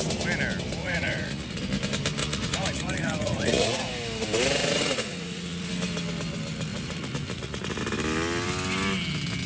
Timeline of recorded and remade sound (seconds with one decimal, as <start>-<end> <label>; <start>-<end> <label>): 0.0-0.8 recorded; 0.8-1.6 remade; 1.6-2.2 recorded; 2.2-3.8 remade; 3.8-4.6 recorded; 4.6-5.7 remade; 5.7-6.7 recorded; 6.7-7.8 remade; 7.8-9.5 recorded